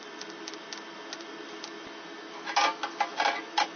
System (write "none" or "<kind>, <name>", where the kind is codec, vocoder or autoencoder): none